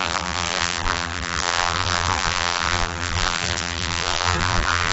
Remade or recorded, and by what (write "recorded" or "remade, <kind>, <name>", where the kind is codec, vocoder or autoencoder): remade, vocoder, BigVGAN v2